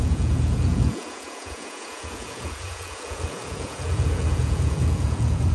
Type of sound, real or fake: fake